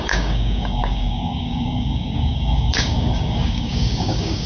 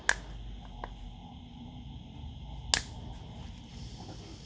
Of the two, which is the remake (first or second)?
first